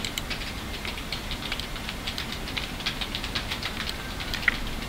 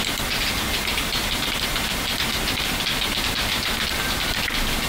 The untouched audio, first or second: second